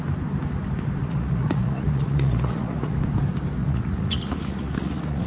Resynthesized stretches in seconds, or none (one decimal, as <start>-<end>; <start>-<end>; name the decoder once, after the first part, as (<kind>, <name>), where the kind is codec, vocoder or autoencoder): 1.0-3.0 (vocoder, Vocos); 3.6-5.3